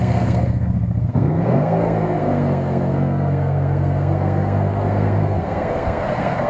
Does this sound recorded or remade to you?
remade